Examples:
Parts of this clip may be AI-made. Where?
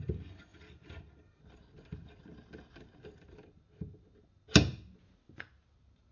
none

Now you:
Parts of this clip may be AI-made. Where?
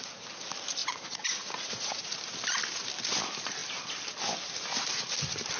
0.8-2.0 (vocoder, Vocos)